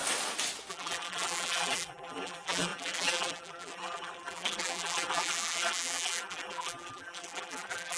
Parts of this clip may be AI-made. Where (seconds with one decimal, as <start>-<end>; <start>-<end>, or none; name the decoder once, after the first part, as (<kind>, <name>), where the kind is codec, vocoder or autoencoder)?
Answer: 0.7-8.0 (vocoder, BigVGAN v2)